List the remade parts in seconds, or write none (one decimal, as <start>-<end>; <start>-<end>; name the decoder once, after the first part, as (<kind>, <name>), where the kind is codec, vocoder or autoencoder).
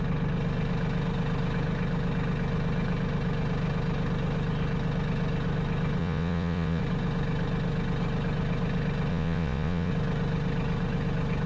6.0-6.8 (vocoder, Vocos); 9.1-9.9